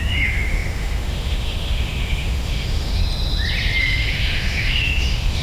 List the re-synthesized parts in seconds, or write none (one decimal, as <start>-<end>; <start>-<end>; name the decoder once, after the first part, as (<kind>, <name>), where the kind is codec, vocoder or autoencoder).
0.0-3.0 (autoencoder, DAC-VAE); 3.8-5.4

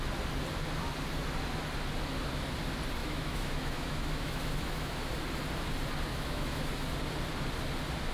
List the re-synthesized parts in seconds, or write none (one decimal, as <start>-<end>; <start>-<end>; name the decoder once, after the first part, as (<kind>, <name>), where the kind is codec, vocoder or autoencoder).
3.0-5.1 (autoencoder, DAC-VAE); 6.1-6.7

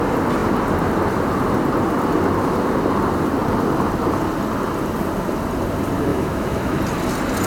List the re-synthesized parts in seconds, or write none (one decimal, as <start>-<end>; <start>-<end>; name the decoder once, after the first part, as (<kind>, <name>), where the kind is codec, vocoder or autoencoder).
6.1-6.8 (autoencoder, DAC-VAE)

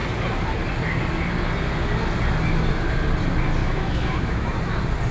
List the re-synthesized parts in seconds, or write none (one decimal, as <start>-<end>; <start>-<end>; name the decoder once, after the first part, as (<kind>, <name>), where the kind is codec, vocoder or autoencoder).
3.6-4.6 (autoencoder, DAC-VAE)